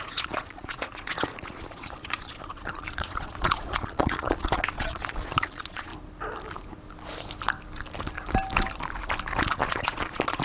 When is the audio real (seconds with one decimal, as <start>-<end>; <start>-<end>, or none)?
5.9-9.5